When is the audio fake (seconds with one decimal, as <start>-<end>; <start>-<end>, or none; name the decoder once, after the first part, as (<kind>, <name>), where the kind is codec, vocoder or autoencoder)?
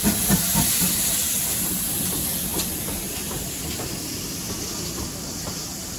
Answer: none